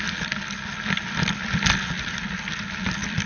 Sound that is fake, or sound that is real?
real